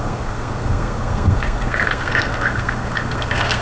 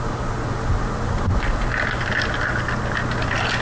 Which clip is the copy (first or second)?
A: first